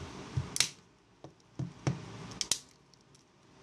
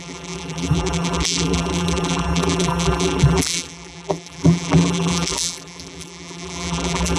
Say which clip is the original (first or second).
first